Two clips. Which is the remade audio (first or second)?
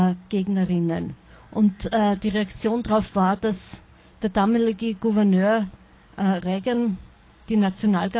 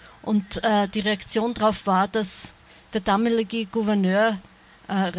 first